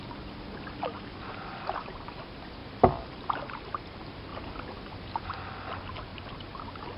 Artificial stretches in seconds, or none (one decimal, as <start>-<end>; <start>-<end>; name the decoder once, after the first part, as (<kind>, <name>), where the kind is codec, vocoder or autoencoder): none

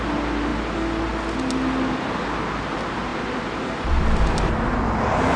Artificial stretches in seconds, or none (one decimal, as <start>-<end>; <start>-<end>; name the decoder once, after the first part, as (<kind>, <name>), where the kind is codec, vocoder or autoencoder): none

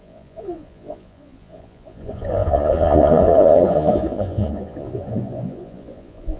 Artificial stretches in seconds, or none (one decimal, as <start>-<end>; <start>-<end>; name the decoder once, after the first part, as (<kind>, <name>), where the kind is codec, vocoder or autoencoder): 0.0-6.4 (vocoder, Vocos)

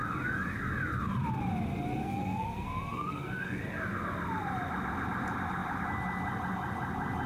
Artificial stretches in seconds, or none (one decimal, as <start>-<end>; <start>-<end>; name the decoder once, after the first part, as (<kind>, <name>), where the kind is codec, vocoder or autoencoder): 2.0-3.6 (codec, SNAC)

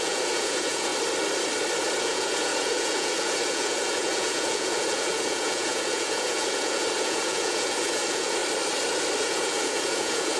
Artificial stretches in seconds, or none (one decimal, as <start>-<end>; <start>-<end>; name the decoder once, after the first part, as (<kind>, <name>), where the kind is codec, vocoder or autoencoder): 0.0-0.9 (vocoder, Vocos); 2.0-8.4; 9.2-10.4

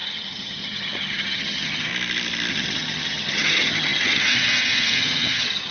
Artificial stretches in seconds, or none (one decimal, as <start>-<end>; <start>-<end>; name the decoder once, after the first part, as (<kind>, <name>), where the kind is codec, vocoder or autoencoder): 0.0-1.9 (vocoder, HiFi-GAN); 2.5-5.7